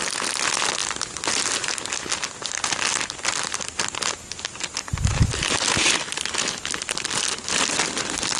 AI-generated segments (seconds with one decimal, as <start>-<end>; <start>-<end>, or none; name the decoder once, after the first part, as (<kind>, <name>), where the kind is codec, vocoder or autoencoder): none